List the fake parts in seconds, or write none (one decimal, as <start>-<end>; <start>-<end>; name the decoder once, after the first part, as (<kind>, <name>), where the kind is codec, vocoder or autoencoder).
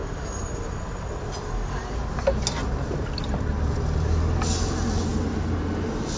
none